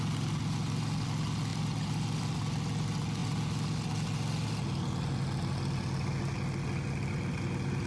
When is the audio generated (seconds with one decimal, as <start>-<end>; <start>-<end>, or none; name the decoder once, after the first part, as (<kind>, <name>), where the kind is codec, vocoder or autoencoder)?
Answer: none